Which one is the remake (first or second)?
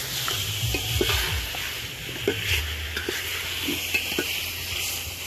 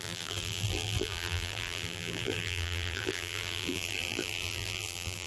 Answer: second